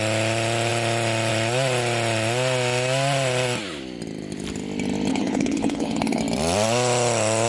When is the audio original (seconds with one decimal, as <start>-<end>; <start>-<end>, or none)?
0.0-5.1; 6.2-7.5